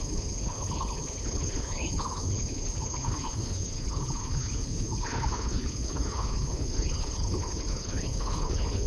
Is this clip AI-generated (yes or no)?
yes